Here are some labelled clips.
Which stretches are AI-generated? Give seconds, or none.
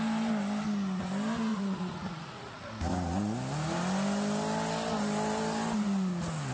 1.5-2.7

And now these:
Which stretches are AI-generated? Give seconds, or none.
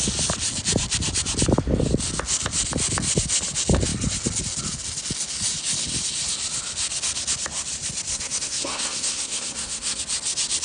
8.1-10.0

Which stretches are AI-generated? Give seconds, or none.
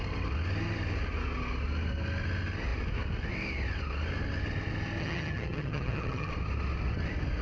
5.0-6.3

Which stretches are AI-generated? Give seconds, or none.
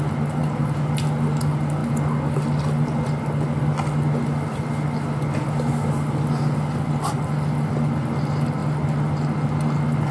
none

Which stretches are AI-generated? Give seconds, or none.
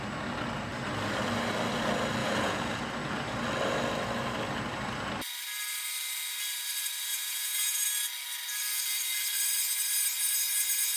2.2-2.8; 7.1-7.8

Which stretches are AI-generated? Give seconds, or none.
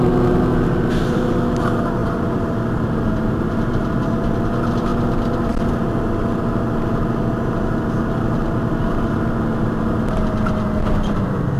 2.0-3.9; 4.9-5.8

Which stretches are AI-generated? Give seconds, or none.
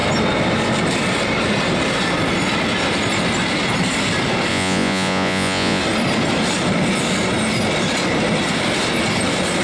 4.5-5.8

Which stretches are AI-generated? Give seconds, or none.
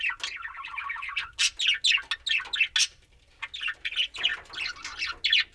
none